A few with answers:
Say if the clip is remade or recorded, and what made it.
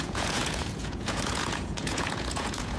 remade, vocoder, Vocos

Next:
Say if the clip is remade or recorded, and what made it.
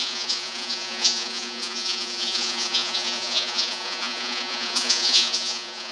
remade, vocoder, Vocos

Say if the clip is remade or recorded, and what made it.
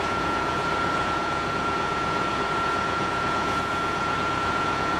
remade, vocoder, Vocos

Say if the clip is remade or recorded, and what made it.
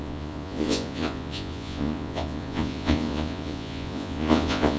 remade, vocoder, Vocos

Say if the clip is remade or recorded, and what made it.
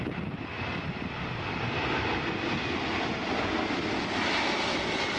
recorded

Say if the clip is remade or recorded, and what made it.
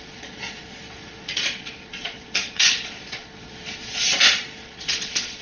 remade, vocoder, Vocos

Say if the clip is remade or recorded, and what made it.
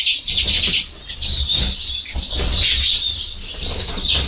recorded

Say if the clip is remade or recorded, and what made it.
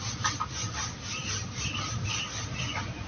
recorded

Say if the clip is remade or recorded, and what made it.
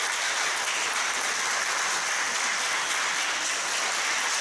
recorded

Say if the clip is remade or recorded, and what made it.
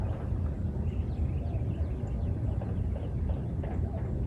recorded